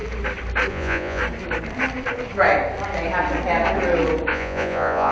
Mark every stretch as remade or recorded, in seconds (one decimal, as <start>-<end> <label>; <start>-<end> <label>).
0.0-0.7 recorded; 0.7-1.2 remade; 1.2-4.3 recorded; 4.3-5.1 remade